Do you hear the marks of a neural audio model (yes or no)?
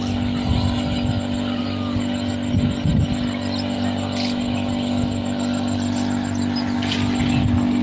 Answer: no